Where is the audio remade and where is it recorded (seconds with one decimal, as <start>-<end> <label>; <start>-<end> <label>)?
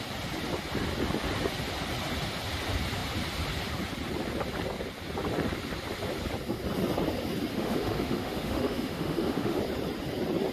0.0-7.5 recorded; 7.5-9.6 remade; 9.6-10.5 recorded